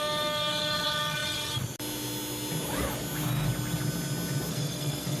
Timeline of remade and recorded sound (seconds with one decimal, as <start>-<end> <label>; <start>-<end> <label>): 0.0-4.5 recorded; 4.5-5.2 remade